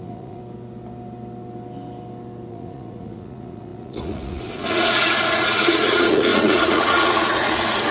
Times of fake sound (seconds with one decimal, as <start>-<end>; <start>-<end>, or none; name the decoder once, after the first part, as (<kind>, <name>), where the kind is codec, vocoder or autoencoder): 0.0-0.4 (vocoder, Vocos); 2.5-7.9